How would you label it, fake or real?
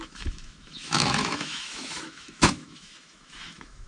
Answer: fake